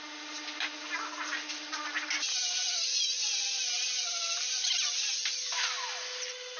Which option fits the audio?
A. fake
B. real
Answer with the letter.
B